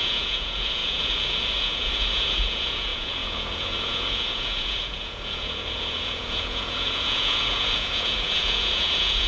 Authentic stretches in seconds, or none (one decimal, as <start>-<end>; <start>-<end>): none